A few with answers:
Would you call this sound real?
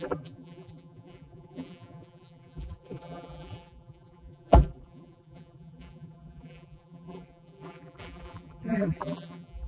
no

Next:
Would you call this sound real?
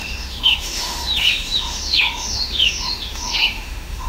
no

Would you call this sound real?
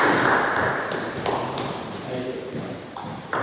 yes